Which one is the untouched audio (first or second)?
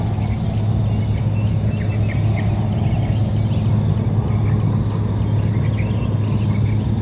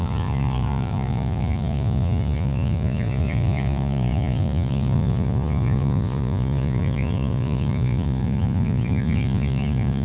first